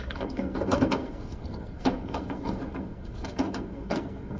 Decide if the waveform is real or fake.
fake